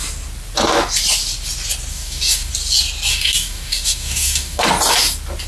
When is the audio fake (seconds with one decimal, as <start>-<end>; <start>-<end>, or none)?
1.9-2.5; 3.1-4.6